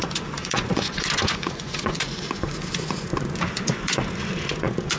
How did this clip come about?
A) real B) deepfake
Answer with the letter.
B